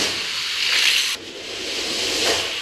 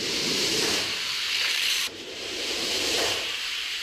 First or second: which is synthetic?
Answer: second